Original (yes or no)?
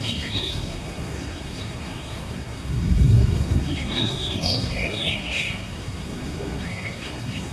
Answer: no